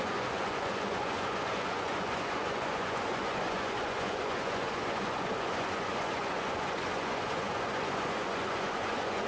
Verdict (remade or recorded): remade